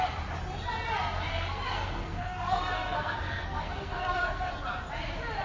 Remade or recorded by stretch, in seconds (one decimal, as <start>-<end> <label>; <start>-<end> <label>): 0.0-1.3 recorded; 1.3-4.5 remade; 4.5-5.4 recorded